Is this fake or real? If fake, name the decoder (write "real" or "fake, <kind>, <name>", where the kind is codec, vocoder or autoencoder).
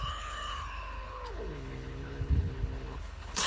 fake, codec, HILCodec